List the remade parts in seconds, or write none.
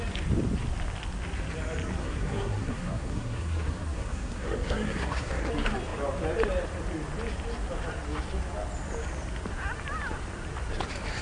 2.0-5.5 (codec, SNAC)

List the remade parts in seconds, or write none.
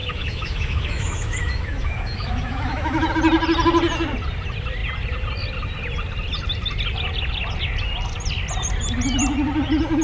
0.0-3.1 (autoencoder, DAC-VAE)